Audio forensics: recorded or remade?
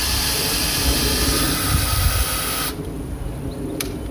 recorded